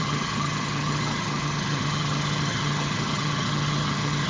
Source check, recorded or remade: remade